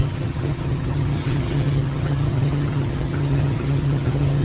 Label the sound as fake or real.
fake